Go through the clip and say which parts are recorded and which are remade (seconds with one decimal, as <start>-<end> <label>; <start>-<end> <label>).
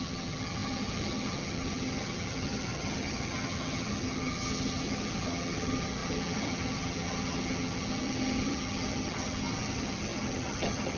0.0-11.0 remade